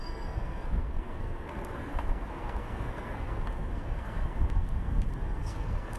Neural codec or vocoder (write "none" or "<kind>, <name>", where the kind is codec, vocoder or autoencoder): codec, SNAC